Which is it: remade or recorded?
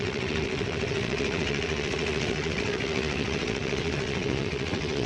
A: remade